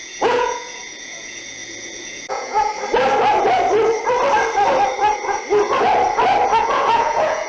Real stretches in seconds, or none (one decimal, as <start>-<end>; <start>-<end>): 2.7-6.6